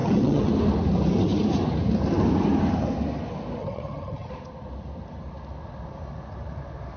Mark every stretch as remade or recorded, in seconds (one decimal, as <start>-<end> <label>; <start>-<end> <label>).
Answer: 0.0-0.5 remade; 0.5-3.6 recorded; 3.6-4.3 remade; 4.3-7.0 recorded